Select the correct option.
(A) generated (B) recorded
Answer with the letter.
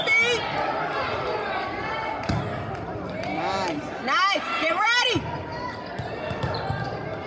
B